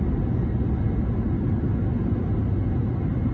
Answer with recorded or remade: recorded